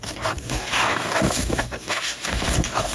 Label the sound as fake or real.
fake